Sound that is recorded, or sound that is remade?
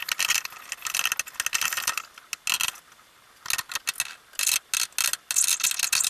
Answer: recorded